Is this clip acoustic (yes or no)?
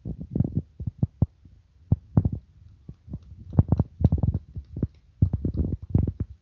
yes